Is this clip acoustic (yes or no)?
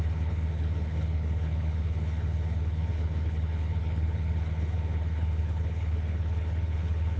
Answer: no